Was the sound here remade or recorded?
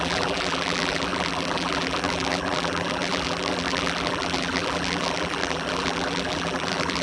remade